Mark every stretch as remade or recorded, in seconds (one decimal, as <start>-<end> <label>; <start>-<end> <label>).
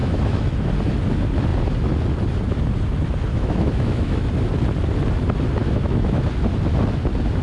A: 0.0-0.7 remade; 0.7-3.3 recorded; 3.3-4.2 remade; 4.2-5.6 recorded; 5.6-6.2 remade; 6.2-7.4 recorded